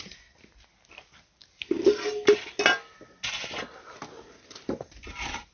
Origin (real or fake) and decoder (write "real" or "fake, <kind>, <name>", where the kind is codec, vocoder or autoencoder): real